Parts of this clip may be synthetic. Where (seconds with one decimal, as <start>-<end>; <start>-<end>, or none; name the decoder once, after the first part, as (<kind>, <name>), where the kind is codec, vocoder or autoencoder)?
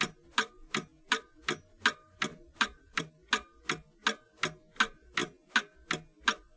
2.3-3.0 (vocoder, BigVGAN v2)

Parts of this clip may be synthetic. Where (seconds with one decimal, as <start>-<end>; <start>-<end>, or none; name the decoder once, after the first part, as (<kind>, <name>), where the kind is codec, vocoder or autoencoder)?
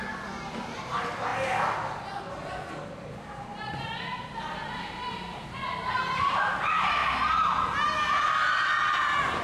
3.5-6.1 (vocoder, BigVGAN v2)